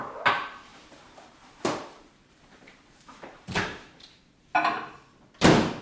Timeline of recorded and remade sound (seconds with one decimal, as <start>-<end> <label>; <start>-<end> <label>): 0.0-0.7 recorded; 0.7-4.2 remade; 4.2-5.8 recorded